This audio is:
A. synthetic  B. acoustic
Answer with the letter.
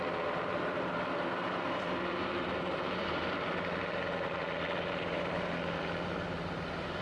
A